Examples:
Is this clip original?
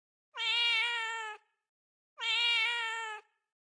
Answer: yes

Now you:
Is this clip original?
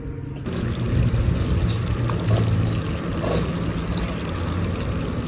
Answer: yes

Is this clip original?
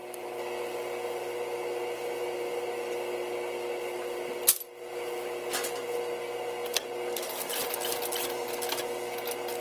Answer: yes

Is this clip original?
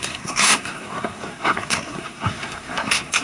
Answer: no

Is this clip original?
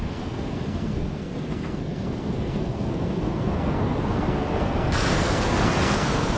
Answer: no